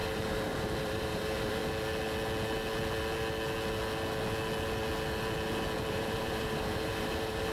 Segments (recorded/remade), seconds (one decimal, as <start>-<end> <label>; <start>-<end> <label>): 0.0-1.6 remade; 1.6-5.8 recorded; 5.8-7.5 remade